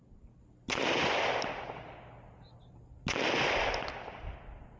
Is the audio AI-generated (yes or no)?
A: no